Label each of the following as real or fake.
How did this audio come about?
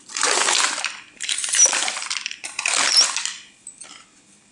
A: real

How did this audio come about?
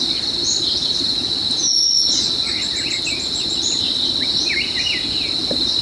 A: real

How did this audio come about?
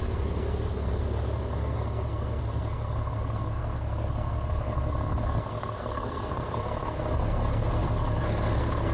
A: fake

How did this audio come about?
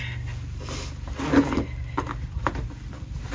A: real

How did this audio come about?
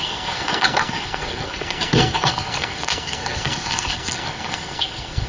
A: fake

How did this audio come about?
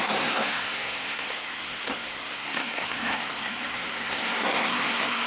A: fake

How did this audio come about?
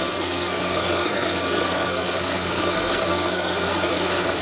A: fake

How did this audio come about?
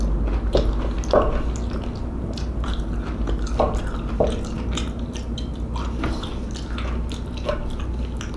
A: real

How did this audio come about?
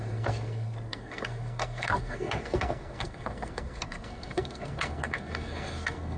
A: fake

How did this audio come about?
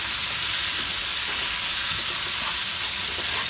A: real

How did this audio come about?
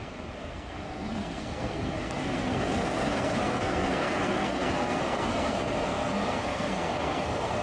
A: fake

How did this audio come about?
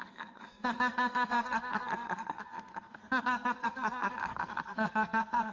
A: fake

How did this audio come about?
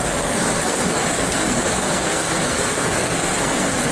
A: fake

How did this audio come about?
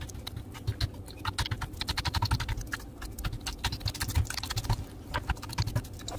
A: real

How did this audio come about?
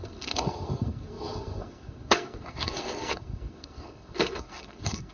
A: fake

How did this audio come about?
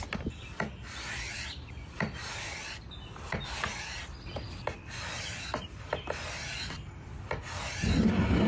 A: real